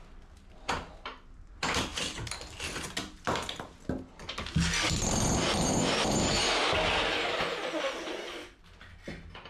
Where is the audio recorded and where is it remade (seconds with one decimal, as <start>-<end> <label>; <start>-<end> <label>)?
0.0-9.5 recorded